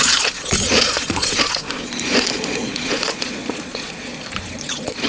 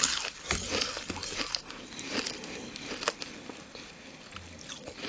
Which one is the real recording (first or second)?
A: second